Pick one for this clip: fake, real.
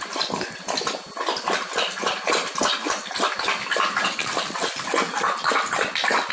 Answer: real